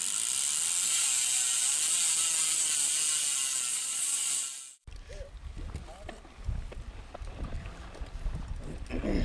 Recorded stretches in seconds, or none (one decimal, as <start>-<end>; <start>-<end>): 0.0-3.7; 4.3-9.2